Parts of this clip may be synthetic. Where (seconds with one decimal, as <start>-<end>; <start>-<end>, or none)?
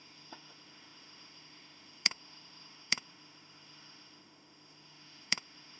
0.0-5.8